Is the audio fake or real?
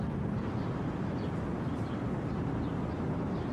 real